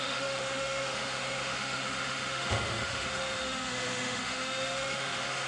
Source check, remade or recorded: remade